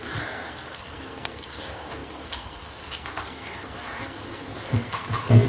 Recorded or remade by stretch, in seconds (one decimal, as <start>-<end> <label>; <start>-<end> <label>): 0.0-5.5 remade

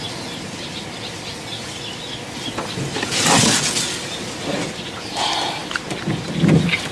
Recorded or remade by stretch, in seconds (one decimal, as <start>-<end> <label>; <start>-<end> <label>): 0.0-6.9 recorded

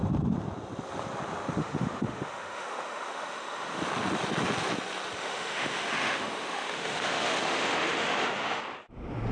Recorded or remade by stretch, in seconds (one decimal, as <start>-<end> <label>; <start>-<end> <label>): 0.0-1.6 recorded; 1.6-3.8 remade; 3.8-5.2 recorded; 5.2-8.6 remade; 8.6-9.3 recorded

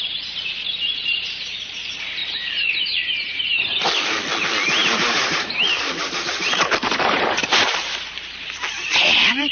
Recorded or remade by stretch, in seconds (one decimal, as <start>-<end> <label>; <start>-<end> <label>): 0.0-2.2 recorded; 2.2-3.6 remade; 3.6-4.8 recorded; 4.8-9.5 remade

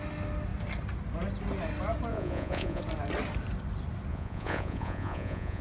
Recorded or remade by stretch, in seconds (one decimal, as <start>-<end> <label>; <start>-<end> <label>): 0.0-2.1 recorded; 2.1-2.8 remade; 2.8-4.1 recorded; 4.1-5.6 remade

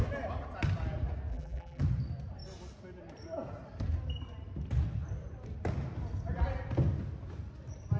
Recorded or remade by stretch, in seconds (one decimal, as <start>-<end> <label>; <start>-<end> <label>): 0.0-1.3 recorded; 1.3-1.8 remade; 1.8-8.0 recorded

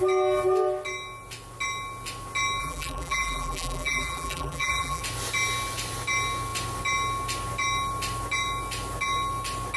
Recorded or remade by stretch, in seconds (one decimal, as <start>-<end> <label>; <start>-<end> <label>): 0.0-2.6 recorded; 2.6-5.0 remade; 5.0-9.8 recorded